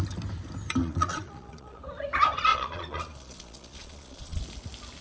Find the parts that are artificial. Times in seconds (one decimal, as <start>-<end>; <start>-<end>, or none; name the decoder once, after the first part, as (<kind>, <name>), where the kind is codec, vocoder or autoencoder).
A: 0.8-1.8 (vocoder, Vocos); 2.5-4.4